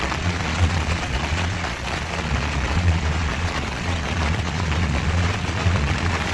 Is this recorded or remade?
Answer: remade